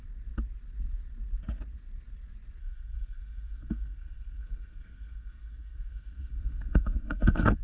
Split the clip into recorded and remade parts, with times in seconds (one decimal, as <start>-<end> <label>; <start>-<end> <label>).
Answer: 0.0-2.6 recorded; 2.6-7.6 remade